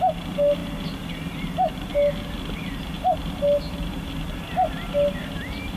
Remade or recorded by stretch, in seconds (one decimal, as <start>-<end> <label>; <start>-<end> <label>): 0.0-5.8 recorded